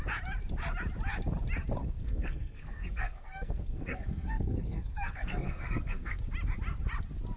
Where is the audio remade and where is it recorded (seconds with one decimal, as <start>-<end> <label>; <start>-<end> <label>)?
0.0-1.8 recorded; 1.8-6.2 remade; 6.2-7.4 recorded